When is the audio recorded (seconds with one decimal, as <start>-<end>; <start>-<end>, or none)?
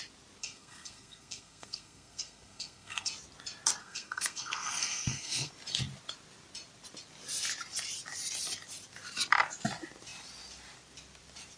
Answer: 0.0-0.4; 3.1-3.8; 5.5-11.6